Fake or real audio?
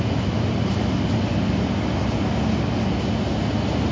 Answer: real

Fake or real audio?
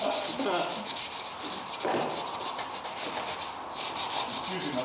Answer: real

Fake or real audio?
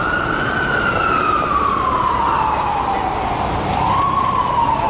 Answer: real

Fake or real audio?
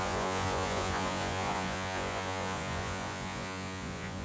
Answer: fake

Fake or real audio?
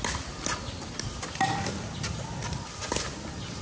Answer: real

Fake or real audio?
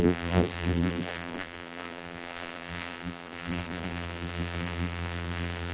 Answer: fake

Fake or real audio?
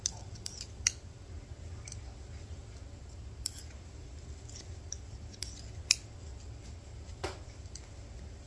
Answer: real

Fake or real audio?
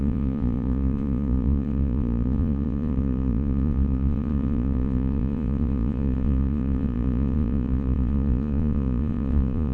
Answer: fake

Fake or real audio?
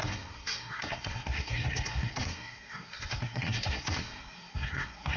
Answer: fake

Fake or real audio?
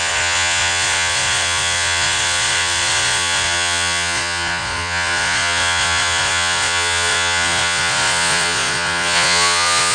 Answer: fake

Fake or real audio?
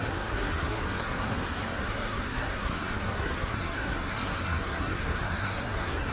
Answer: fake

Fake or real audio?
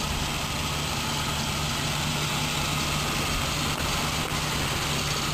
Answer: real